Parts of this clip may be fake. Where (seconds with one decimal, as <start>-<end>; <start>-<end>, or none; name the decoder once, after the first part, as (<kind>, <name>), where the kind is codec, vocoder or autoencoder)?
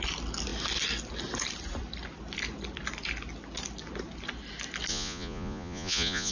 4.9-6.3 (vocoder, Vocos)